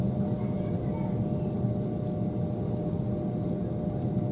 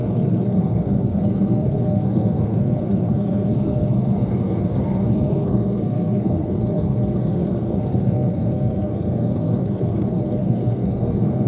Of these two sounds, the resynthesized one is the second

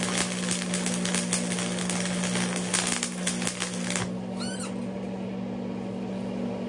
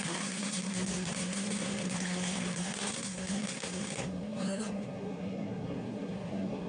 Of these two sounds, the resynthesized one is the second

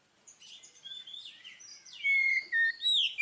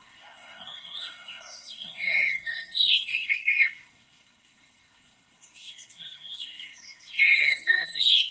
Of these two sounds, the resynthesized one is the second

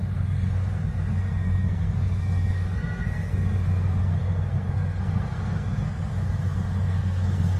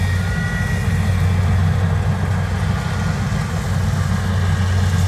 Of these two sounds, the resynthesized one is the first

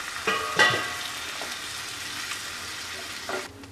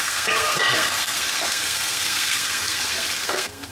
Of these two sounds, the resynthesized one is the second